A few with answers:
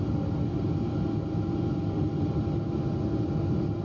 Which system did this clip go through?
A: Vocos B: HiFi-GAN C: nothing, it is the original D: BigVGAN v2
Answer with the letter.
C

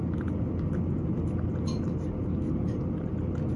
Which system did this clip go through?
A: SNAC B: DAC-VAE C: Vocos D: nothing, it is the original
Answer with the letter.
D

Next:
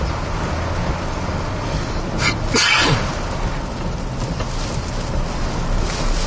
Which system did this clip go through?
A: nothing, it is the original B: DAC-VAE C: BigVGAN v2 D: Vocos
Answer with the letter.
A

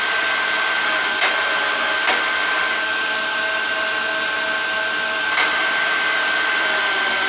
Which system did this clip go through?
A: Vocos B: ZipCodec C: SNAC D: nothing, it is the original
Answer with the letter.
D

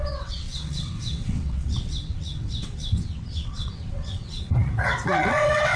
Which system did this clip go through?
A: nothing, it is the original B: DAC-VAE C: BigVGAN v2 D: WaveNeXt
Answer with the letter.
D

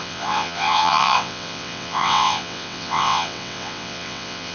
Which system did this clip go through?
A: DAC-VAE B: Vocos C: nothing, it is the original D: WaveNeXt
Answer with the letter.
D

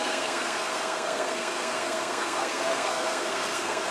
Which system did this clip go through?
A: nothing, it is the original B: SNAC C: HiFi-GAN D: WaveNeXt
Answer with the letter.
B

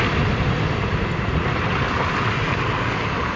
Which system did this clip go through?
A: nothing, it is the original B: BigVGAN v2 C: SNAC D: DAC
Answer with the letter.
A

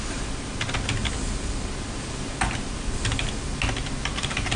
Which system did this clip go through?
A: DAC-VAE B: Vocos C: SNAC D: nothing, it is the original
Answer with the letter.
D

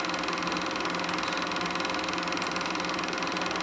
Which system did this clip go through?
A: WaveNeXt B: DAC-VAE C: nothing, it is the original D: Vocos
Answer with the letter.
C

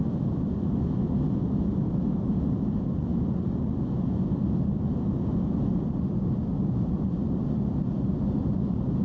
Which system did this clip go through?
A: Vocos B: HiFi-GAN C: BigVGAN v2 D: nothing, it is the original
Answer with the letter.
D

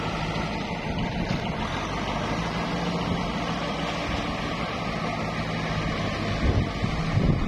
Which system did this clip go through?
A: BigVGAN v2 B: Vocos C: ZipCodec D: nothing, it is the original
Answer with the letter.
D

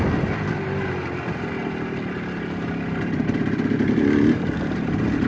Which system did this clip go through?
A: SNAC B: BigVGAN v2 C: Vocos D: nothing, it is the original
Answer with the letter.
D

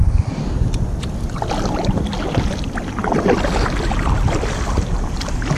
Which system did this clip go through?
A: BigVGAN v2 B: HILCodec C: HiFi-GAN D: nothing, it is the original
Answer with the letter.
D